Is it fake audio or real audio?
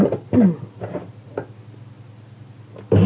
real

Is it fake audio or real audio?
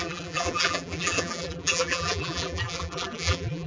fake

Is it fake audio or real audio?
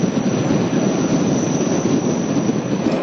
real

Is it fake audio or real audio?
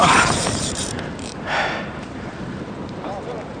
fake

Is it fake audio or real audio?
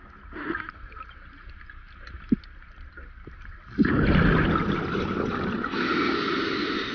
real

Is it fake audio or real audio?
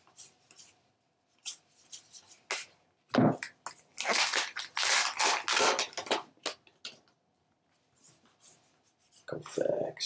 real